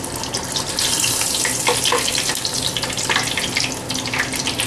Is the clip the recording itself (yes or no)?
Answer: yes